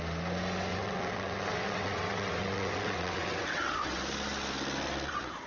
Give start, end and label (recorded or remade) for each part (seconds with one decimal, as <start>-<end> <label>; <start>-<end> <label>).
0.0-0.7 recorded; 0.7-4.0 remade; 4.0-5.5 recorded